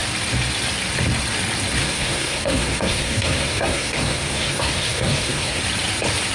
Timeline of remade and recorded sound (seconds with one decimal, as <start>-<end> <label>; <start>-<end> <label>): 0.0-1.8 recorded; 1.8-5.6 remade; 5.6-6.3 recorded